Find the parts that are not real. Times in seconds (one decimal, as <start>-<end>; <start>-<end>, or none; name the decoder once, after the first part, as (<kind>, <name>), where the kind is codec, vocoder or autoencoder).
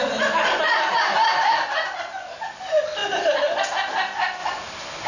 none